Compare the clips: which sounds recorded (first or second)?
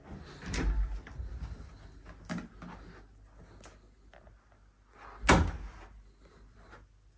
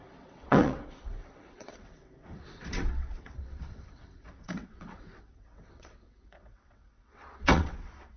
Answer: first